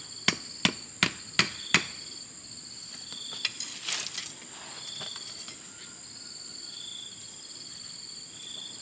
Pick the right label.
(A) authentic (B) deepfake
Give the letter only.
A